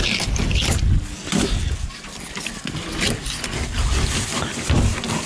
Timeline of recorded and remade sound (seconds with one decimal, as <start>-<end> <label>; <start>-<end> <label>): 0.0-5.3 recorded